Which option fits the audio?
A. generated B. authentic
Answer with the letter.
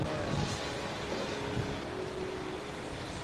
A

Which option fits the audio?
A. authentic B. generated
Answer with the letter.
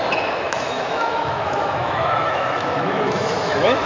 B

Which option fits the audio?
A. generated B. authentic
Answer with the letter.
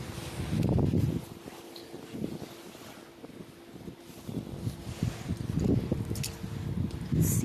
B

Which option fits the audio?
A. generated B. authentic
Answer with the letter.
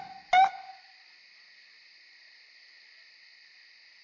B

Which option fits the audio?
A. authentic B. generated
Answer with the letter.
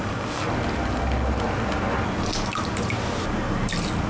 A